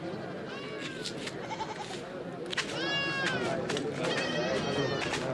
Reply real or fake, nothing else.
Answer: real